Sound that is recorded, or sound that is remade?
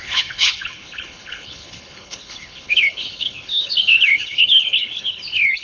remade